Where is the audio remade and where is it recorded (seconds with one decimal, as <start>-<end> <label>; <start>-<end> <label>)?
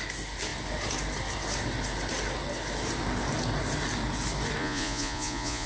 0.0-4.6 recorded; 4.6-5.7 remade